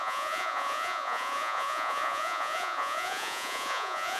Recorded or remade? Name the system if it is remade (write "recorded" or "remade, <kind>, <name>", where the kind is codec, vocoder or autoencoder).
remade, vocoder, Vocos